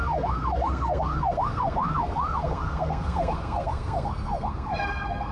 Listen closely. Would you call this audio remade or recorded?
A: remade